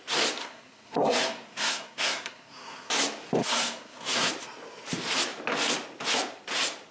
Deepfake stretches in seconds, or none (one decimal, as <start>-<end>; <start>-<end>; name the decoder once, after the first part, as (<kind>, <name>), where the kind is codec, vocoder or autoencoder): 0.4-2.9 (codec, SNAC); 3.4-4.3